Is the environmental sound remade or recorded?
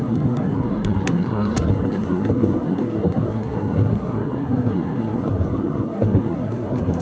remade